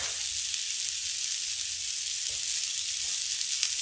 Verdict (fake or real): real